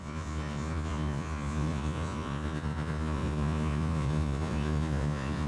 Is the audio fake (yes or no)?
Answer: yes